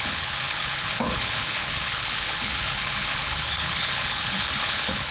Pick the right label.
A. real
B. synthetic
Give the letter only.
B